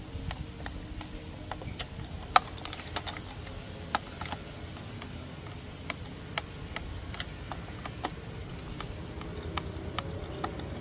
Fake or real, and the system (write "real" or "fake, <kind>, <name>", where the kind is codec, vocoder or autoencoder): real